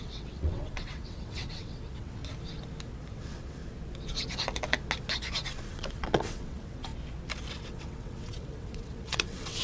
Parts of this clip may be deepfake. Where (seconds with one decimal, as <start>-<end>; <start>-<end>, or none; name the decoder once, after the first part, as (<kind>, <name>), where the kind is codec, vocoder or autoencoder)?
0.0-2.2 (vocoder, WaveNeXt); 3.1-3.6; 5.7-6.9; 7.5-9.6